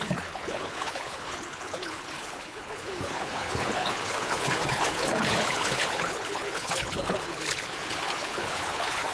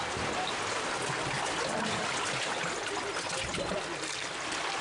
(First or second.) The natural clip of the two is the second